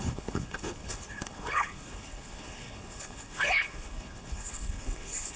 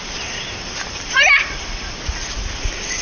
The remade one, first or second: first